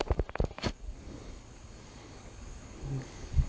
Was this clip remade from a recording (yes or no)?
yes